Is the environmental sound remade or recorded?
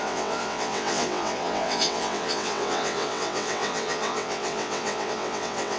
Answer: remade